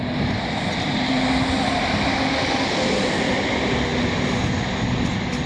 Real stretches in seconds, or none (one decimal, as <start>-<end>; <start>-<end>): 0.0-5.5